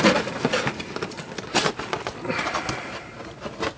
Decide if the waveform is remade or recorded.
recorded